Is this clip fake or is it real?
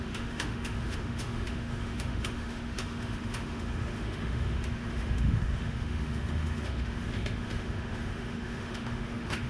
fake